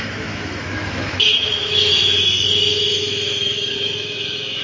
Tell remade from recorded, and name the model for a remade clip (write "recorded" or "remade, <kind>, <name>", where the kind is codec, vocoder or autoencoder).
remade, autoencoder, DAC-VAE